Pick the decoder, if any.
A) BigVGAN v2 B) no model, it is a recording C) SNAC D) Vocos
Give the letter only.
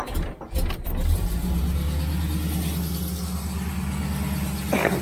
B